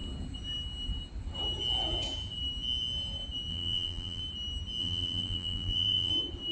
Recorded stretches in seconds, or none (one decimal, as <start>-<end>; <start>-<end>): 0.0-3.5; 4.2-4.8; 6.1-6.5